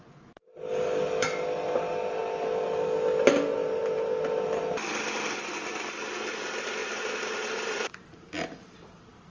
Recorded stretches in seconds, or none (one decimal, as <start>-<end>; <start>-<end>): 0.0-6.8; 8.1-9.3

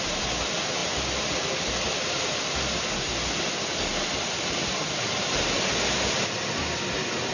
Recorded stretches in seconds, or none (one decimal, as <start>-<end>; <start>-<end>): 0.0-7.3

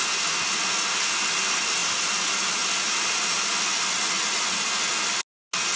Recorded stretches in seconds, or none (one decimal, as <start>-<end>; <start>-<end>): 0.0-5.8

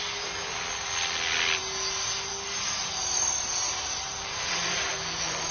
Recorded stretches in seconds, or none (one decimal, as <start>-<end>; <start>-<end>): 0.0-2.8; 4.9-5.5